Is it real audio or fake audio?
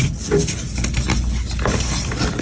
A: real